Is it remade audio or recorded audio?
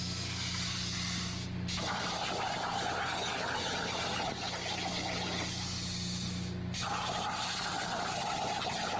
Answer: recorded